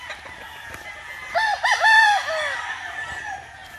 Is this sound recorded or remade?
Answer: recorded